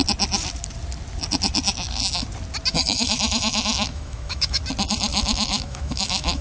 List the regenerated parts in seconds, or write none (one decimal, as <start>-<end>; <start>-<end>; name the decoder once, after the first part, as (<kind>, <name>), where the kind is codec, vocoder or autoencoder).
2.7-4.6 (autoencoder, DAC-VAE); 5.1-6.4